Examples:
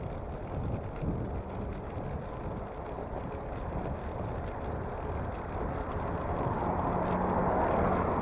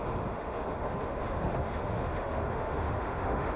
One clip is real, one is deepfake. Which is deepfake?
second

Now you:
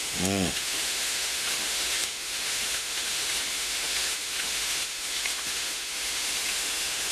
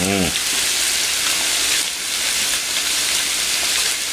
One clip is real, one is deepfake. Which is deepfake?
first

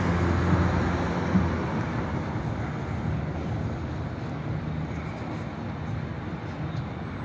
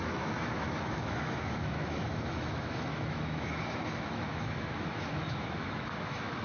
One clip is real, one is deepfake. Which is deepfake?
second